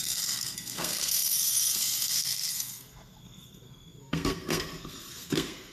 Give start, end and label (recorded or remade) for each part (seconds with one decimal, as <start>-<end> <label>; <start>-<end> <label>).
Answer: 0.0-5.7 remade